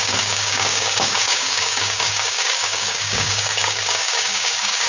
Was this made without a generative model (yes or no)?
no